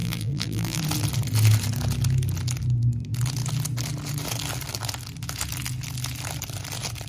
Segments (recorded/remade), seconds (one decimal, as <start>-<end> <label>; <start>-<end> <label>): 0.0-0.8 remade; 0.8-7.1 recorded